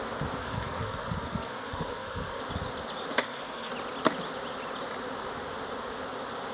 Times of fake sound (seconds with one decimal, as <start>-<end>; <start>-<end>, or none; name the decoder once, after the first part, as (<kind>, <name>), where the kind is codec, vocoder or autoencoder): 0.4-2.4 (codec, SNAC); 3.2-3.7